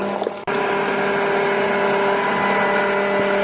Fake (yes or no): no